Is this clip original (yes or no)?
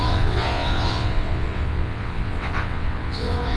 no